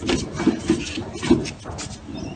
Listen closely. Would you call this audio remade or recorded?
recorded